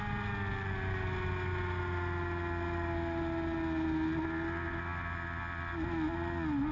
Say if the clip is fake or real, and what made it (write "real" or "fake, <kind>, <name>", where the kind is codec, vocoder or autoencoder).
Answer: real